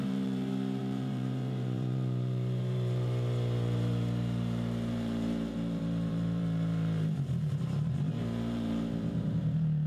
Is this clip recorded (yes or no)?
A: no